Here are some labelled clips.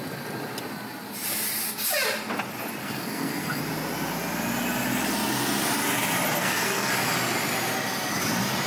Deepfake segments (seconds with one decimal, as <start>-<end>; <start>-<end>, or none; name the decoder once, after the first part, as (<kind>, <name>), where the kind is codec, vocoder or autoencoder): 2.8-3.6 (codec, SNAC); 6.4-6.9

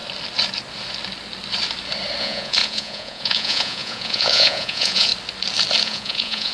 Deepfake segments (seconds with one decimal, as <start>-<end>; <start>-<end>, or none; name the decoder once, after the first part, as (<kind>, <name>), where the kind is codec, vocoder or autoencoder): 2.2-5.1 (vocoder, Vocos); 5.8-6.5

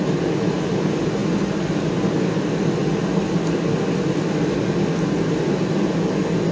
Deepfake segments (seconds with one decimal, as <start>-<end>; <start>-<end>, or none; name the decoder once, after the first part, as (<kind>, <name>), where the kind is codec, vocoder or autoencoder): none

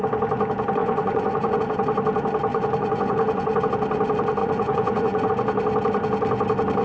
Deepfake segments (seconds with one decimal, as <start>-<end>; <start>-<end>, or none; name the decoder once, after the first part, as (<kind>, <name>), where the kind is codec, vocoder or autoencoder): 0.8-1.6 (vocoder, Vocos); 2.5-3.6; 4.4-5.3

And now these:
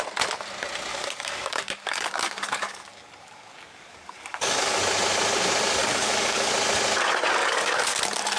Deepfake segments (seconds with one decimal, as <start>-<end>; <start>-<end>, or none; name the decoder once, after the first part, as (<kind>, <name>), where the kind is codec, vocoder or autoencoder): 0.9-4.8 (codec, DAC); 5.8-6.5; 7.4-8.0